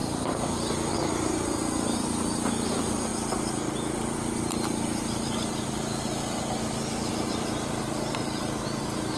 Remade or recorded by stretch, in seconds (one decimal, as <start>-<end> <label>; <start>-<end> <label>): 0.0-9.2 recorded